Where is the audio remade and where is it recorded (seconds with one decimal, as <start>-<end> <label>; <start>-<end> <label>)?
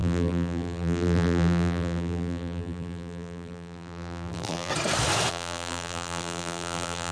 0.0-4.7 remade; 4.7-5.3 recorded; 5.3-7.1 remade